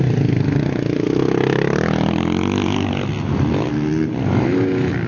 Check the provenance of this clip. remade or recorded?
recorded